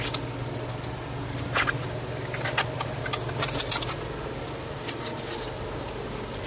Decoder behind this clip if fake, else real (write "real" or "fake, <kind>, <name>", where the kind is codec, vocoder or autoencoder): real